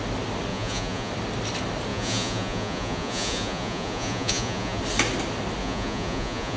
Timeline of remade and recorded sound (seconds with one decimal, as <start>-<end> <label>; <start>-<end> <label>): 0.0-0.5 recorded; 0.5-1.1 remade; 1.1-1.9 recorded; 1.9-4.8 remade; 4.8-5.6 recorded; 5.6-6.6 remade